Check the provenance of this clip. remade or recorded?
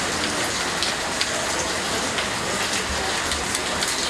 recorded